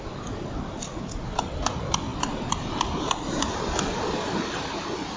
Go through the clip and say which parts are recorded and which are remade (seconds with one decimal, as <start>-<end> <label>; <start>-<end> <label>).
0.0-5.2 recorded

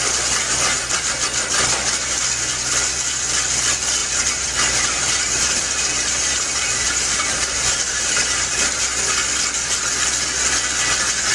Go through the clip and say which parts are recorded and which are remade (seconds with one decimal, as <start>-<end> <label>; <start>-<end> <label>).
0.0-4.0 recorded; 4.0-8.8 remade; 8.8-11.3 recorded

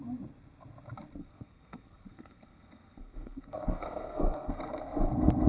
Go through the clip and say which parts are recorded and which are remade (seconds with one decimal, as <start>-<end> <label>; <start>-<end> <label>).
0.0-1.2 recorded; 1.2-4.5 remade; 4.5-5.5 recorded

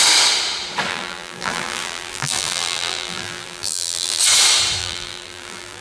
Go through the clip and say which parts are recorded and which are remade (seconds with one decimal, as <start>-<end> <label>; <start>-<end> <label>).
0.0-0.9 recorded; 0.9-4.2 remade; 4.2-4.8 recorded; 4.8-5.8 remade

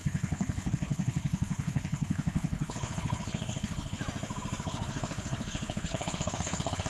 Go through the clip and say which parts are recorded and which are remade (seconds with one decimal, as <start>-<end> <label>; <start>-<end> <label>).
0.0-4.0 remade; 4.0-4.6 recorded; 4.6-6.9 remade

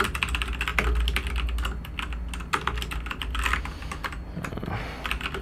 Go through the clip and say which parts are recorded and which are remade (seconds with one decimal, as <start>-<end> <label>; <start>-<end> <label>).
0.0-5.4 recorded

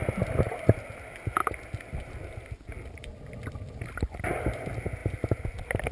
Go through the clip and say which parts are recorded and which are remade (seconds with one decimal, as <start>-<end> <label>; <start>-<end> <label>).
0.0-5.9 recorded